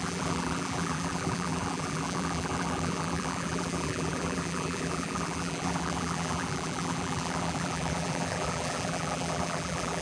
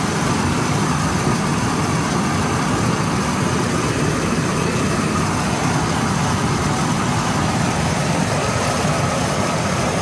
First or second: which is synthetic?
first